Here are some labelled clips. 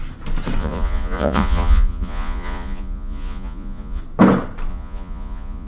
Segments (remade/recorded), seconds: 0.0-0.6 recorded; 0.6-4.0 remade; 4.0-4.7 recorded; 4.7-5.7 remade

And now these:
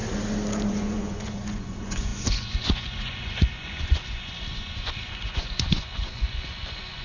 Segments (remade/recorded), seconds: 0.0-0.7 recorded; 0.7-7.0 remade